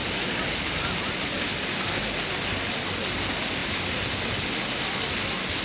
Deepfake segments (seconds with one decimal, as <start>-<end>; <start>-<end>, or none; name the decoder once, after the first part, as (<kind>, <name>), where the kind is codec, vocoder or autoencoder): none